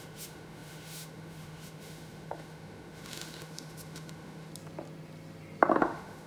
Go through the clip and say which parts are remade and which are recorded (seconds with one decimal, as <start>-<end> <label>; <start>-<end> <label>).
0.0-4.5 remade; 4.5-5.8 recorded; 5.8-6.3 remade